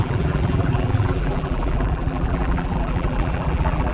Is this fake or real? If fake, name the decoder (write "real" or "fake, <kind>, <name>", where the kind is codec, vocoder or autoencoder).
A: fake, vocoder, BigVGAN v2